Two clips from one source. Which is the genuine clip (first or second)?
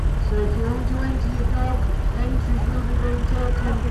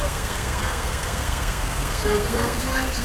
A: first